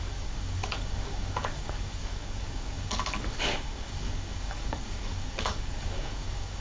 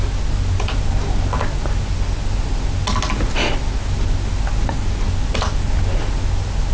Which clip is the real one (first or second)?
second